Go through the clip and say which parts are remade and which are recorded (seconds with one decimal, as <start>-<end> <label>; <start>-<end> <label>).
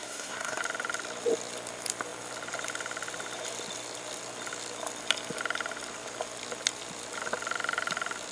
0.0-0.6 remade; 0.6-8.3 recorded